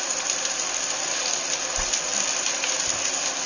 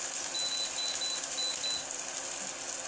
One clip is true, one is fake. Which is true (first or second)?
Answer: second